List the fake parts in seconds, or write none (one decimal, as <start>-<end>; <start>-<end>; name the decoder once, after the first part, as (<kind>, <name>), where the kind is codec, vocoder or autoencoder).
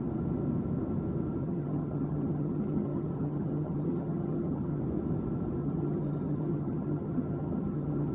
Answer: 1.4-4.8 (vocoder, HiFi-GAN); 5.6-8.1